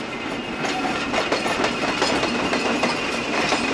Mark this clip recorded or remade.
recorded